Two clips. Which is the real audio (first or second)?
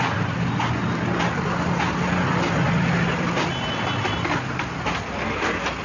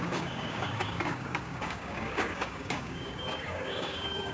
first